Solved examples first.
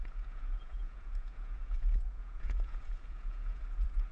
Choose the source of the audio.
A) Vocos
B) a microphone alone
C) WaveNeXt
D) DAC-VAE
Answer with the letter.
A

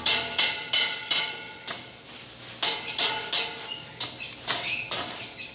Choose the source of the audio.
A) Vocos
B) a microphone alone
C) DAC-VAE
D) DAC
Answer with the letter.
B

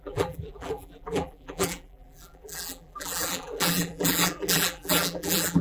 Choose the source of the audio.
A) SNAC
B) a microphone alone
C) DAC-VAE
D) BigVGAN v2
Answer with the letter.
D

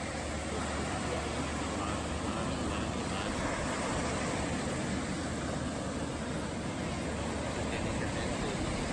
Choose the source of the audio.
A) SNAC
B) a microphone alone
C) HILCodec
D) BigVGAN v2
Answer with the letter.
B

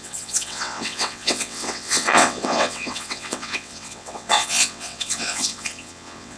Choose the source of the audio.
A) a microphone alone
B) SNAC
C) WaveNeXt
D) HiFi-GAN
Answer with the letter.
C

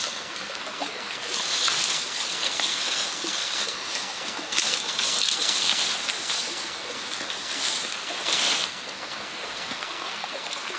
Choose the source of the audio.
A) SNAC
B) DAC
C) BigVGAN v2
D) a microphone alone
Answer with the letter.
A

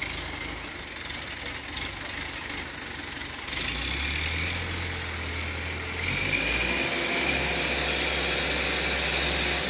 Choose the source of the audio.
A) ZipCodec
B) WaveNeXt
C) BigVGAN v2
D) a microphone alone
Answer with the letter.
D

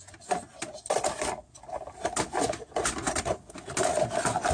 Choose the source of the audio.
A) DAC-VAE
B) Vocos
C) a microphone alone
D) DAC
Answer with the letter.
C